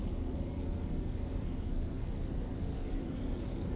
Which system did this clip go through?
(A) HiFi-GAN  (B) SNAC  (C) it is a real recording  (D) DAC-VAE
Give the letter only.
B